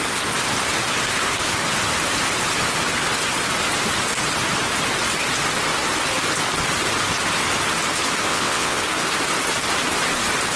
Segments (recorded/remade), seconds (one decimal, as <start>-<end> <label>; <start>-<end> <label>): 0.0-8.3 recorded; 8.3-8.8 remade; 8.8-10.6 recorded